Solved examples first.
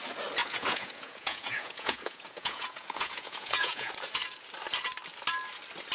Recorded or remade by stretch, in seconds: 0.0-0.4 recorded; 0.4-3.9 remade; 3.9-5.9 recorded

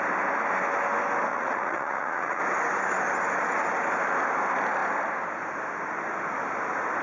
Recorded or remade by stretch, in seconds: 0.0-1.3 recorded; 1.3-2.4 remade; 2.4-7.0 recorded

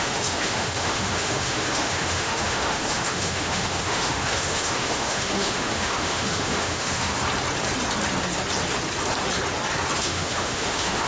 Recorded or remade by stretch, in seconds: 0.0-7.1 remade; 7.1-10.0 recorded; 10.0-11.1 remade